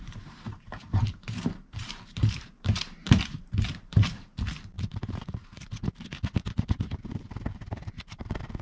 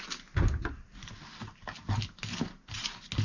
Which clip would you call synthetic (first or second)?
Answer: first